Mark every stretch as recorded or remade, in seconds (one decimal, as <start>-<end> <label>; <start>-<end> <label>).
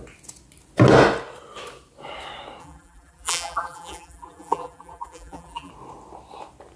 0.0-2.6 recorded; 2.6-5.7 remade; 5.7-6.8 recorded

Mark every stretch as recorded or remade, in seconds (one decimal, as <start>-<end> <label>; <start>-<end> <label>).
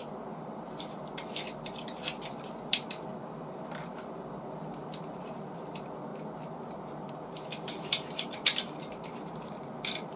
0.0-6.1 remade; 6.1-7.1 recorded; 7.1-10.2 remade